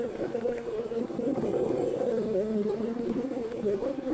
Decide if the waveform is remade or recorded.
remade